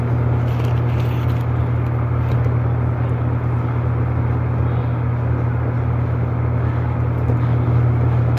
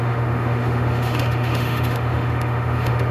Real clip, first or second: first